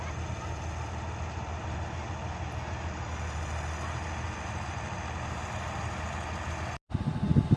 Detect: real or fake real